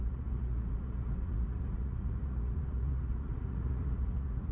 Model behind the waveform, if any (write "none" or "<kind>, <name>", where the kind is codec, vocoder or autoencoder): vocoder, Vocos